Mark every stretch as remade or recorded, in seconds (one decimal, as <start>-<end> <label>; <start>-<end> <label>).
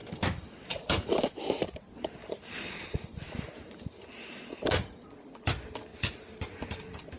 0.0-1.6 remade; 1.6-2.2 recorded; 2.2-4.1 remade; 4.1-7.2 recorded